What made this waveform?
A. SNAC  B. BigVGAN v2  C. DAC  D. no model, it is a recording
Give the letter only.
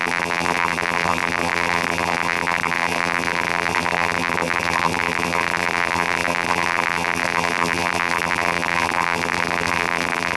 B